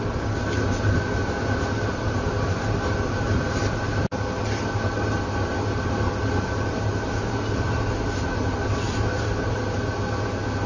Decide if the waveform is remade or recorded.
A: recorded